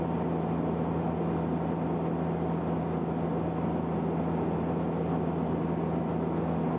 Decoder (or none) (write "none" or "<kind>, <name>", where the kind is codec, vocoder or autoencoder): none